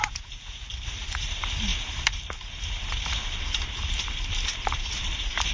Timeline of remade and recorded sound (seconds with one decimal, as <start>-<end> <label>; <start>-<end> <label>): 0.0-0.6 remade; 0.6-5.5 recorded